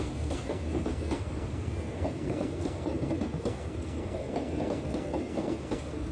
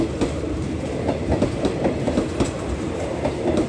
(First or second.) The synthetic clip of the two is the first